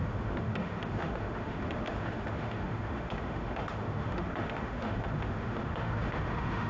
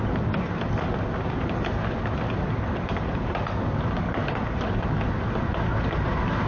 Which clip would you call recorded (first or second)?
second